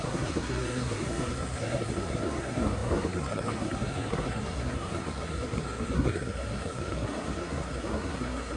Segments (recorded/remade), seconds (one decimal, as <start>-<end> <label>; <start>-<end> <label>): 0.0-8.6 remade